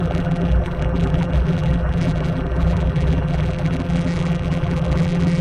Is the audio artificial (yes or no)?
yes